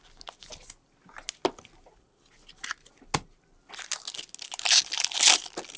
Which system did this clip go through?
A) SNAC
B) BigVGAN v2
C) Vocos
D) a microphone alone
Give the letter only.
D